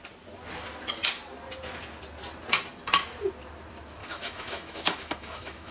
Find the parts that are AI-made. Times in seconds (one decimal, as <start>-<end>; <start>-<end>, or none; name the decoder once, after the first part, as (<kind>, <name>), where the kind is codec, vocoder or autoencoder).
4.0-5.7 (autoencoder, DAC-VAE)